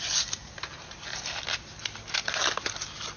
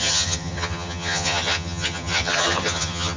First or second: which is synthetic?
second